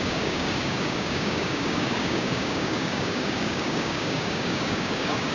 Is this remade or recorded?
remade